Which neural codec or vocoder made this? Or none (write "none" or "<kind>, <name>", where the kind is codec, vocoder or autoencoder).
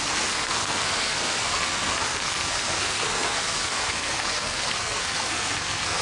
codec, SNAC